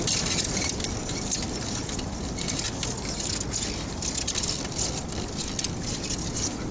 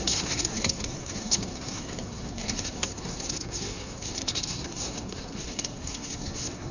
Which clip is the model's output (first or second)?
second